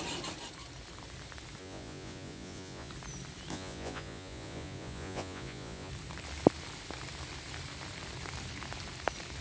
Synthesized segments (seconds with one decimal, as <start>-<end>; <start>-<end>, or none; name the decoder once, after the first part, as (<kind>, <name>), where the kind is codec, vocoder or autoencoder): 1.6-2.9 (vocoder, Vocos); 3.5-5.9